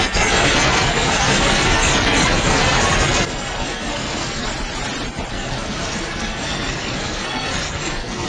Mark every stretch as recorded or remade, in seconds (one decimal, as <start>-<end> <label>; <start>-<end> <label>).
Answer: 0.0-4.5 remade; 4.5-5.3 recorded; 5.3-8.3 remade